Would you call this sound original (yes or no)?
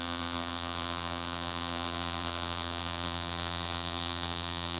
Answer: no